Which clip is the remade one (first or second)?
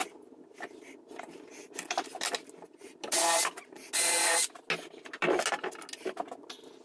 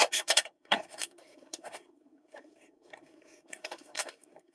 second